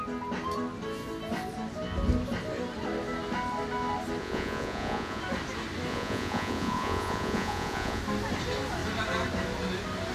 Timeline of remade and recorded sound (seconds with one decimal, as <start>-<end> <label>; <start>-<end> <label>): 0.0-4.2 recorded; 4.2-5.2 remade; 5.2-5.9 recorded; 5.9-8.0 remade; 8.0-10.1 recorded

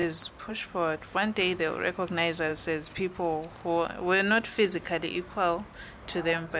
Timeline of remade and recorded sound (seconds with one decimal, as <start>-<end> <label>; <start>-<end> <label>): 0.0-6.6 recorded

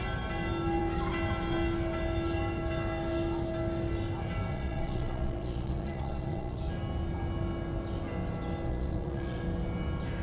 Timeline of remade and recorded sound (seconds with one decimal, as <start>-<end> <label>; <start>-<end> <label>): 0.0-4.5 recorded; 4.5-6.6 remade; 6.6-8.7 recorded; 8.7-9.4 remade; 9.4-10.2 recorded

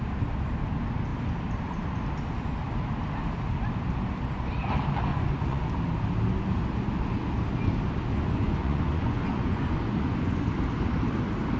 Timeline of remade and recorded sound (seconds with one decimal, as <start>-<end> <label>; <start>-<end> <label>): 0.0-5.1 recorded; 5.1-5.7 remade; 5.7-8.1 recorded; 8.1-10.4 remade; 10.4-11.6 recorded

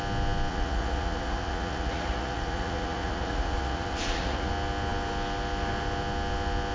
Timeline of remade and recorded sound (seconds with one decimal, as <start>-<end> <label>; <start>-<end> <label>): 0.0-0.5 recorded; 0.5-4.5 remade; 4.5-6.7 recorded

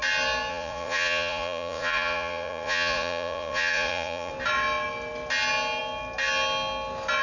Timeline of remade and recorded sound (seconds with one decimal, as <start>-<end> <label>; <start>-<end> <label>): 0.0-0.5 recorded; 0.5-4.3 remade; 4.3-7.2 recorded